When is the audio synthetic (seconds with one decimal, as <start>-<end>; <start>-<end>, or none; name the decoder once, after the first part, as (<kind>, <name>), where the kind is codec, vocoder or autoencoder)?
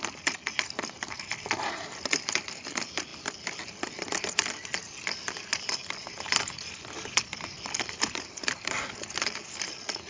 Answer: none